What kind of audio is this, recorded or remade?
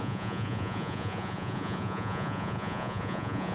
remade